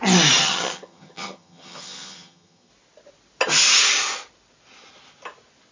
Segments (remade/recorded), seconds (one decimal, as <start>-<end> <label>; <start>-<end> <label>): 0.0-0.4 recorded; 0.4-2.7 remade; 2.7-5.7 recorded

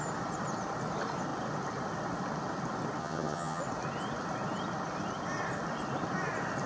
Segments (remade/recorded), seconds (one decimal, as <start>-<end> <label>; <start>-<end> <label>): 0.0-3.0 recorded; 3.0-3.6 remade; 3.6-6.7 recorded